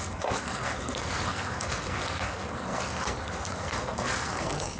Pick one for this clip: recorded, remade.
remade